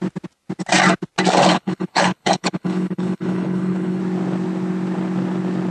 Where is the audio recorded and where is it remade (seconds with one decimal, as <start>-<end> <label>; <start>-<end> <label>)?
0.0-1.5 recorded; 1.5-4.0 remade; 4.0-5.7 recorded